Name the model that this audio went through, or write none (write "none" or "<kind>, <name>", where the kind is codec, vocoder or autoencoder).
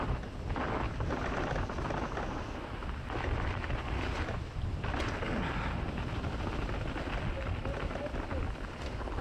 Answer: none